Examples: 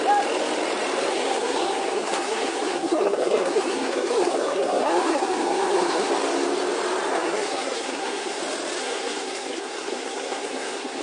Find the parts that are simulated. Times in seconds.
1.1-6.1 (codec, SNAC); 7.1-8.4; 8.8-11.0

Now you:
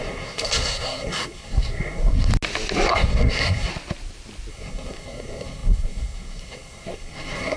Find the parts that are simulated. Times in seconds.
0.0-2.3 (codec, SNAC); 2.9-3.7; 4.5-7.6